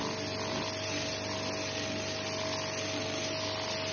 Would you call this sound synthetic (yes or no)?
no